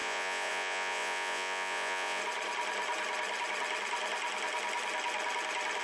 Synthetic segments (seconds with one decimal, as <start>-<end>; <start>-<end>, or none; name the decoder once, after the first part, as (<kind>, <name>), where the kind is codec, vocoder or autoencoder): 0.0-2.2 (vocoder, Vocos)